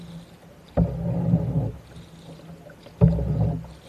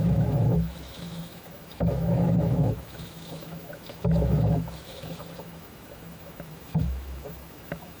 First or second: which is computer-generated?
second